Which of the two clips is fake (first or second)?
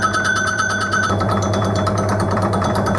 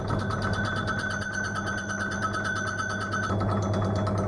first